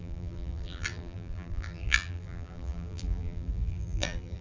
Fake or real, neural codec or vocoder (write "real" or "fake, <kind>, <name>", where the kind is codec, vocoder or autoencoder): fake, vocoder, BigVGAN v2